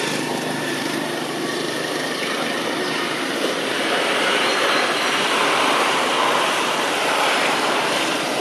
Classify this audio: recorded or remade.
remade